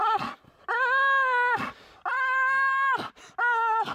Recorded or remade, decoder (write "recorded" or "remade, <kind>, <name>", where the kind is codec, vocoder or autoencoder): recorded